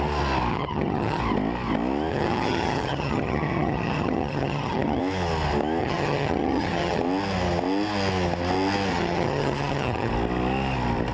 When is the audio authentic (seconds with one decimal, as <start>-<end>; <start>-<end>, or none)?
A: 0.0-0.5; 1.2-2.1; 5.0-5.8; 7.0-8.9; 10.1-11.1